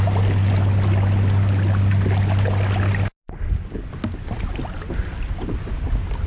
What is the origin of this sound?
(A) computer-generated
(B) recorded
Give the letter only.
B